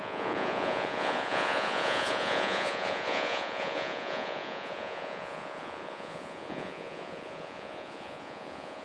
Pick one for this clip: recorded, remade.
remade